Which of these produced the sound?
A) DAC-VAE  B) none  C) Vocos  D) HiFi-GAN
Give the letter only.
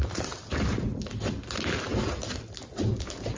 B